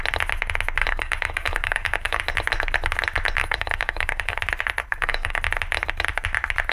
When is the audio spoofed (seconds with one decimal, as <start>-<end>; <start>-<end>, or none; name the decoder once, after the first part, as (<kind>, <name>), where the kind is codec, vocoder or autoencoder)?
0.8-2.2 (codec, DAC); 3.4-4.4; 4.9-5.4